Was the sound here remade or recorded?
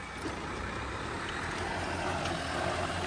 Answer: recorded